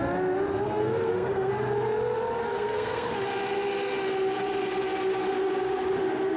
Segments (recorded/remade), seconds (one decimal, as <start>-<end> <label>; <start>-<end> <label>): 0.0-0.8 recorded; 0.8-1.5 remade; 1.5-2.5 recorded; 2.5-3.1 remade; 3.1-6.4 recorded